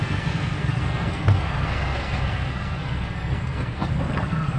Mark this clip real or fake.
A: fake